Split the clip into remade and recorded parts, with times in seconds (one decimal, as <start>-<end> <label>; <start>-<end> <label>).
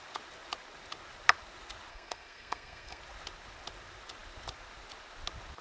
0.0-1.9 recorded; 1.9-3.0 remade; 3.0-5.6 recorded